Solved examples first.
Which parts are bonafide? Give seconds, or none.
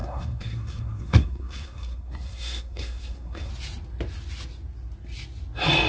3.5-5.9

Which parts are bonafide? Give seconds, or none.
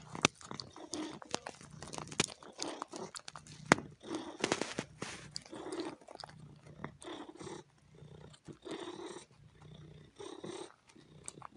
0.0-11.6